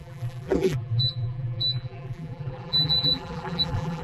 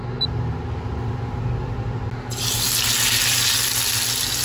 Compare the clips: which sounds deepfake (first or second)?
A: first